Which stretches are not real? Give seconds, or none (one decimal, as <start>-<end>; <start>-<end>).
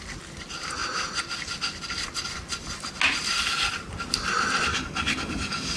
4.7-5.8